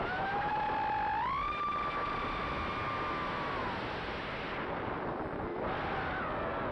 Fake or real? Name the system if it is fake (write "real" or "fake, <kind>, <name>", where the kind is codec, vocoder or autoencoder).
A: real